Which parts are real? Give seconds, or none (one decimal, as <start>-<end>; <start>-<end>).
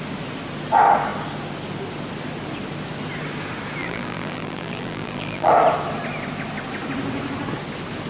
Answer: 0.0-3.8; 5.5-8.1